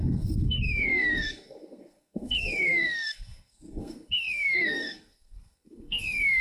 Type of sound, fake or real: fake